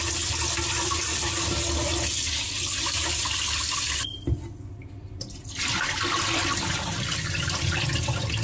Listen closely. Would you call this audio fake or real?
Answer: real